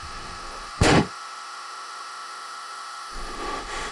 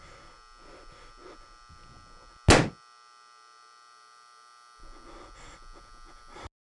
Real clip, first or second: second